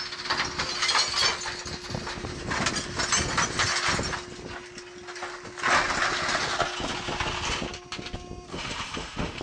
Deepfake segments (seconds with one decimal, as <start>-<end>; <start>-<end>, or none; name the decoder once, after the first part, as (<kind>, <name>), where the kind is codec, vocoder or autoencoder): 8.5-9.4 (autoencoder, DAC-VAE)